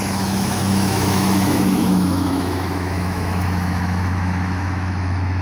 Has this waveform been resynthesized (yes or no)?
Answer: yes